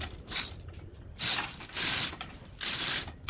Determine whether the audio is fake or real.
fake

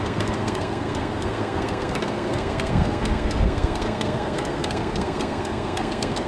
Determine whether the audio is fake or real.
fake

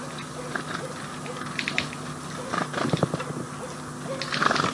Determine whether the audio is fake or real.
real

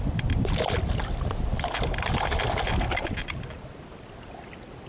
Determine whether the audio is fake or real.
real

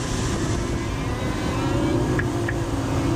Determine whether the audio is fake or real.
real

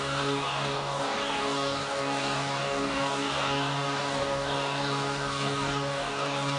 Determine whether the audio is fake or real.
fake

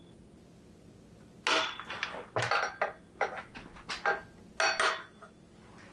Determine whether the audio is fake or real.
real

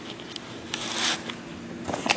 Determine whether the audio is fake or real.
real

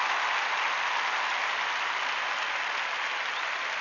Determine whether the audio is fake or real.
real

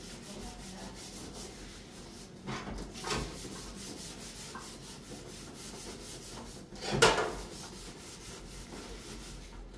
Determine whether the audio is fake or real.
real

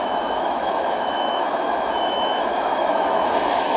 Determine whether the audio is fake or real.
fake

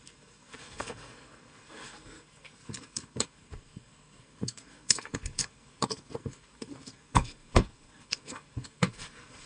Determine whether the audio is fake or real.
fake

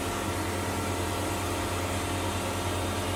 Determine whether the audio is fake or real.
real